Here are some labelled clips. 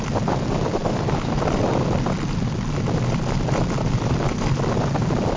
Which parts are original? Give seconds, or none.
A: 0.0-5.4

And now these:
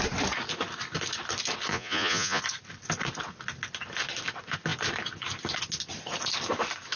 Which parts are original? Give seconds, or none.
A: 0.0-1.7; 2.4-7.0

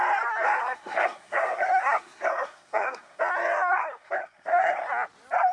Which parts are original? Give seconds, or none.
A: 0.0-0.6; 3.2-3.7; 4.9-5.5

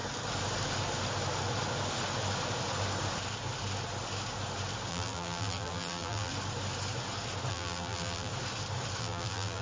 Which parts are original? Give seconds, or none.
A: 0.0-4.9; 6.3-7.5; 8.3-9.0

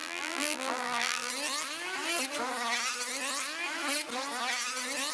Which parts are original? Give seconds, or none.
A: 1.3-5.1